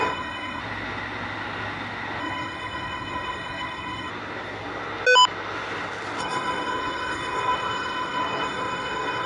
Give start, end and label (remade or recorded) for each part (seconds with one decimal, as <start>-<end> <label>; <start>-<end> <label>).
0.0-0.6 remade; 0.6-2.2 recorded; 2.2-4.1 remade; 4.1-6.2 recorded; 6.2-9.3 remade